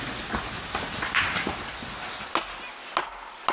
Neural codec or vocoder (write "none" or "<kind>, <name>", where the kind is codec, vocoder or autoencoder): none